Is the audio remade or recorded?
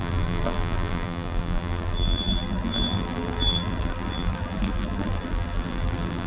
remade